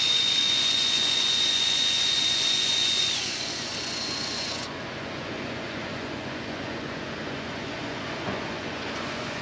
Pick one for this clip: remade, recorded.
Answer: remade